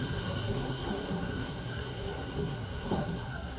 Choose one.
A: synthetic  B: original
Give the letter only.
A